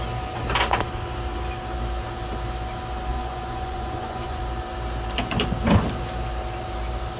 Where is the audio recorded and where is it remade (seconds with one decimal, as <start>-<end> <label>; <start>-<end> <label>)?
0.0-3.1 recorded; 3.1-4.4 remade; 4.4-7.2 recorded